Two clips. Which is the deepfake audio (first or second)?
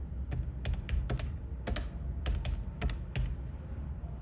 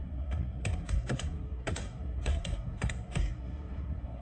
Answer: second